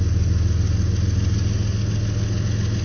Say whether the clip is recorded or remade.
recorded